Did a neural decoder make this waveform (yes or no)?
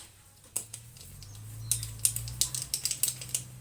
no